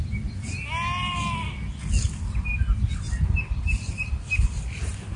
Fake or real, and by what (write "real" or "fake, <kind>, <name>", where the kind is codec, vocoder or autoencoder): real